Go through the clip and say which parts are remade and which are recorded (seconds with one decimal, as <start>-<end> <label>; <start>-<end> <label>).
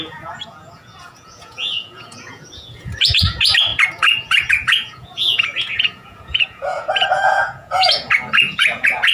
0.0-9.1 remade